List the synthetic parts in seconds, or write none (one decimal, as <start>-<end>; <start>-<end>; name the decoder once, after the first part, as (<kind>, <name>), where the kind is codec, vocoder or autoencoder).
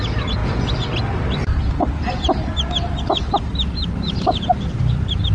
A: 3.8-5.3 (vocoder, BigVGAN v2)